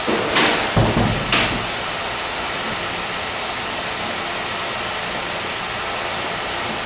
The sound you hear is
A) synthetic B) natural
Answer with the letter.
B